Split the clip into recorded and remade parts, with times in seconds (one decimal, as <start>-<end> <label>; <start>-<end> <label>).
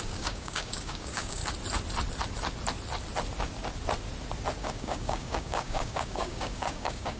0.0-1.4 remade; 1.4-4.6 recorded; 4.6-7.2 remade